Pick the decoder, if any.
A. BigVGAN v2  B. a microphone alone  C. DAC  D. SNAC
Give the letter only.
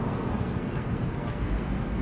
D